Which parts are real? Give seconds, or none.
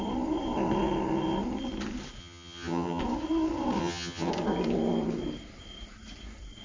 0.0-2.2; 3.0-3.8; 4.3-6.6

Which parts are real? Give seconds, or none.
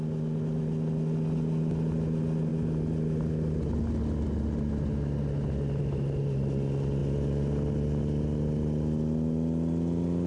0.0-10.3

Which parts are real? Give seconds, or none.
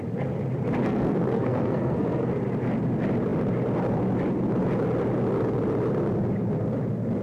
0.0-0.8; 2.3-7.2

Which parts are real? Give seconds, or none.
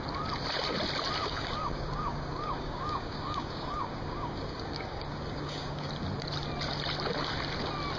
0.0-1.2; 5.9-8.0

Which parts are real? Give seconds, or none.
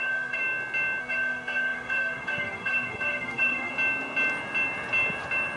0.4-1.0; 3.7-5.6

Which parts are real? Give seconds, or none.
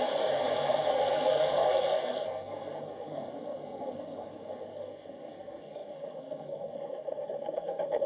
none